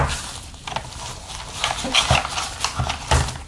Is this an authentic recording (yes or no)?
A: yes